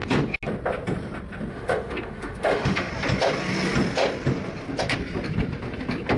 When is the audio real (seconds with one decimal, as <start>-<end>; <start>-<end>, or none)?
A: 0.0-1.5; 2.9-6.2

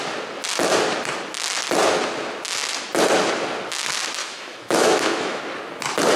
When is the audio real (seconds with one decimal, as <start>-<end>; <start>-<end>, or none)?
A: 0.0-4.2; 5.4-6.2

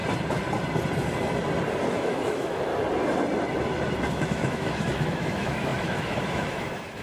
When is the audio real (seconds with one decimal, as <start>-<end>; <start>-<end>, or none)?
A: 0.0-1.9; 2.7-4.1

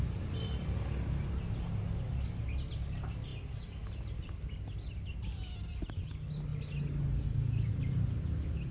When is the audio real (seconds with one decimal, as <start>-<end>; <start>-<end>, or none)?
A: 0.0-8.7

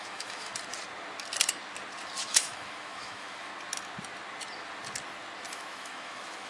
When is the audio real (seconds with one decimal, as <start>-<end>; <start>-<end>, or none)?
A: 0.5-2.2; 3.5-5.5